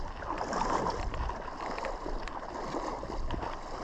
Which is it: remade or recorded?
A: recorded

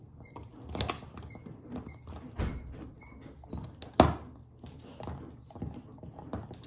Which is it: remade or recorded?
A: recorded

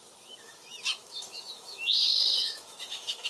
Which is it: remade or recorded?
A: remade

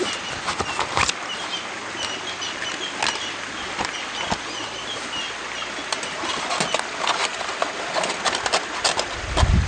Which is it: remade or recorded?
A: recorded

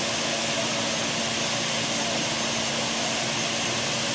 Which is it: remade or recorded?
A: recorded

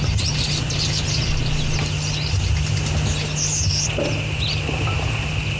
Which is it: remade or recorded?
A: recorded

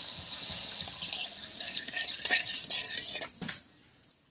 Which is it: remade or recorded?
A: recorded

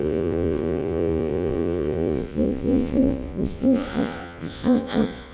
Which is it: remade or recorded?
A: remade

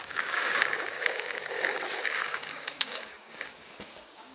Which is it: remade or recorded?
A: remade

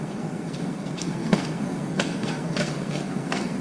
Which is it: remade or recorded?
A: remade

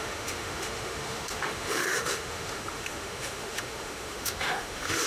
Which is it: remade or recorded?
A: remade